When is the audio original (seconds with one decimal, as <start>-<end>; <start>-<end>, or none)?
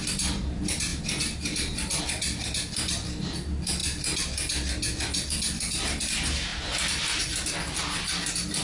0.0-6.5; 7.2-8.6